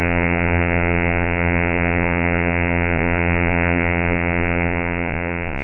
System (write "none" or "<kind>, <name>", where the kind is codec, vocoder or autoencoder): vocoder, Vocos